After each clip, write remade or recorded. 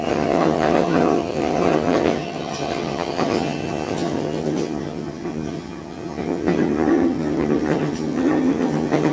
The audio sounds remade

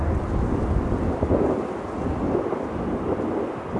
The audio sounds recorded